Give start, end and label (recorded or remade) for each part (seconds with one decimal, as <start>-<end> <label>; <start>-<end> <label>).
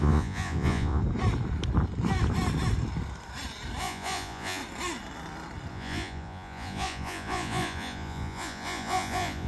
0.0-1.0 remade; 1.0-3.8 recorded; 3.8-4.6 remade; 4.6-5.7 recorded; 5.7-9.5 remade